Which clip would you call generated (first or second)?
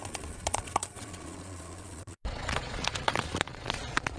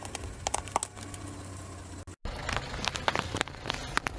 first